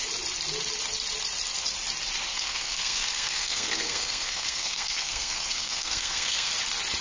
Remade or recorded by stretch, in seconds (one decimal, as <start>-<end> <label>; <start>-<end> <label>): 0.0-2.3 recorded; 2.3-6.5 remade; 6.5-7.0 recorded